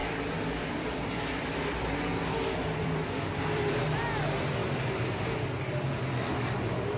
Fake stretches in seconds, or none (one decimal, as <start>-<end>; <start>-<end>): 0.0-3.8; 4.6-6.5